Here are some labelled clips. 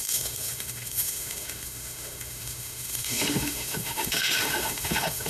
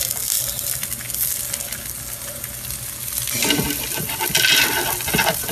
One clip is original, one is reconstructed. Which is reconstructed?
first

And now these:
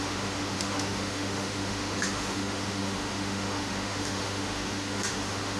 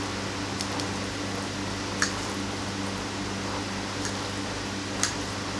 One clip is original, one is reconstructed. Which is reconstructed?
first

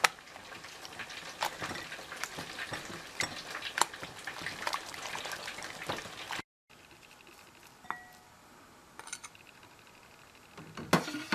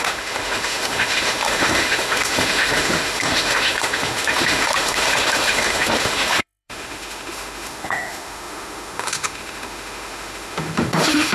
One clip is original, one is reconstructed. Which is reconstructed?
second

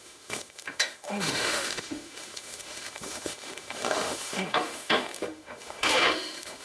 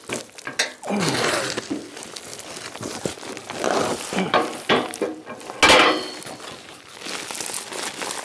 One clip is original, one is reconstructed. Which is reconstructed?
first